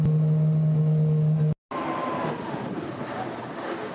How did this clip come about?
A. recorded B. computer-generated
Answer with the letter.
A